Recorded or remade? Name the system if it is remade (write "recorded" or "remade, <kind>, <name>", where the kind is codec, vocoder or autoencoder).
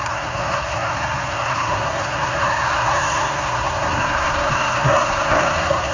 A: remade, codec, SNAC